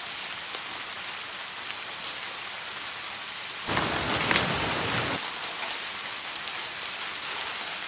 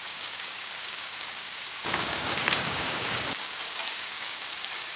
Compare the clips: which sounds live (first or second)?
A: first